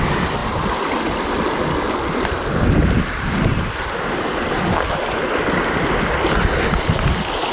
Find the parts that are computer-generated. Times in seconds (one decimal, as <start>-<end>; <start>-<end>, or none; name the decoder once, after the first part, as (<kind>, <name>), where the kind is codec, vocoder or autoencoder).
none